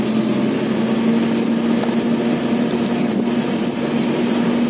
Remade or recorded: recorded